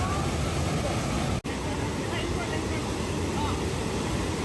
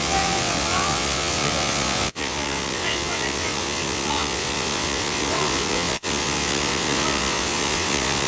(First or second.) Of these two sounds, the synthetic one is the second